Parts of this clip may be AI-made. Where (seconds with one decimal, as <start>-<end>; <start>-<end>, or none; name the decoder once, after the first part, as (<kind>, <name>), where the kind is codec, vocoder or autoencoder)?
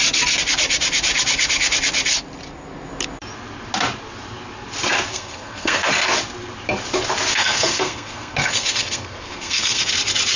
5.1-5.9 (codec, SNAC); 7.3-9.9